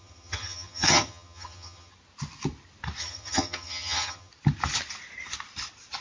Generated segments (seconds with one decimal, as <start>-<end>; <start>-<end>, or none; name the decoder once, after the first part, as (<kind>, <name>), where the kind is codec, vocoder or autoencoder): 0.0-1.9 (vocoder, HiFi-GAN); 3.0-4.3